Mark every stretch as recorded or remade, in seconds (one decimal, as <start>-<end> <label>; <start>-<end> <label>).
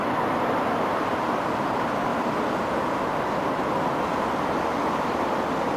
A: 0.0-5.8 recorded